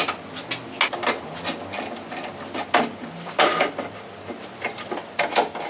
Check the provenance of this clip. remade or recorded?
recorded